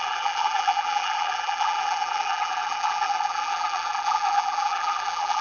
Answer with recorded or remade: remade